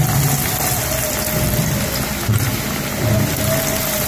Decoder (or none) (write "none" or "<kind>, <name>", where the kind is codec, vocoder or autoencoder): none